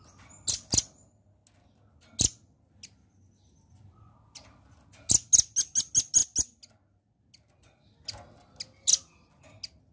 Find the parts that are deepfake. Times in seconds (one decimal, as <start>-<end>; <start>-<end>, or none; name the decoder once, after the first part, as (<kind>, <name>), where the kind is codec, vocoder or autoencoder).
none